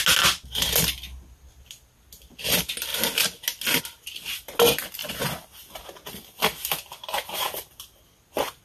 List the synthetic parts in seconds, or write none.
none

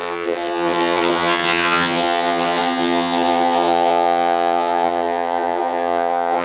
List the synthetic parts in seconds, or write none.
0.0-6.4 (vocoder, HiFi-GAN)

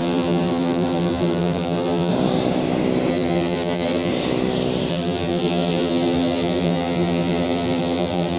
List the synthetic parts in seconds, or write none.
0.0-2.1 (vocoder, BigVGAN v2); 3.1-4.1; 4.9-8.4

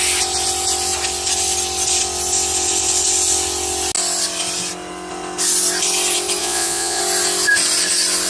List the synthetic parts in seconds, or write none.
6.4-7.0 (vocoder, Vocos)

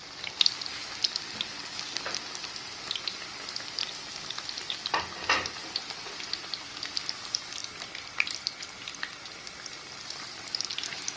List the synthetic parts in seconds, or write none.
none

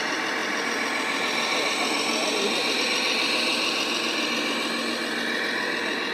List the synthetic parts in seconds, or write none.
none

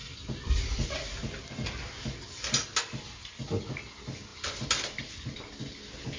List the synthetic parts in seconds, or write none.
none

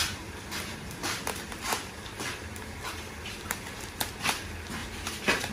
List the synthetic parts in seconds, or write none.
0.0-2.3 (vocoder, BigVGAN v2); 4.8-5.5